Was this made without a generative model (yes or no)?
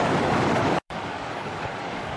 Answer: no